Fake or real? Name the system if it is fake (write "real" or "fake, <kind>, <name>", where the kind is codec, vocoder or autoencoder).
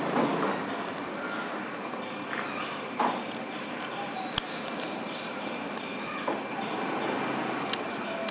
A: real